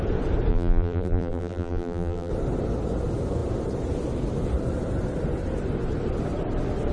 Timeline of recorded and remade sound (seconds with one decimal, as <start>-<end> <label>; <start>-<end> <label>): 0.0-0.5 recorded; 0.5-2.3 remade; 2.3-6.9 recorded